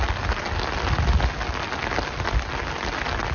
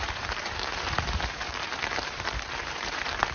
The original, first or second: first